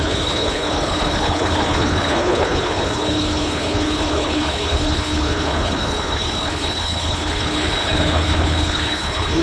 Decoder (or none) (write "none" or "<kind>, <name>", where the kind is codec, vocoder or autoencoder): codec, HILCodec